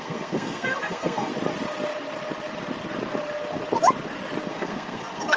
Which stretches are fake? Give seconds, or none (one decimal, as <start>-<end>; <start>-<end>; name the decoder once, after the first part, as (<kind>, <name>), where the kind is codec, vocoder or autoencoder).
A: 0.0-1.3 (codec, SNAC); 4.5-5.4